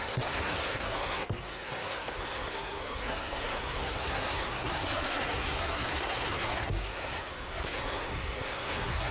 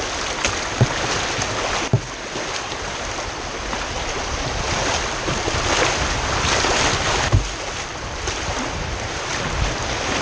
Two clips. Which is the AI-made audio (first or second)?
first